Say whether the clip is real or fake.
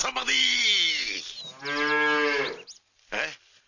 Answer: real